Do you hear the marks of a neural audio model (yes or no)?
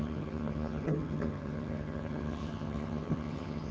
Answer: yes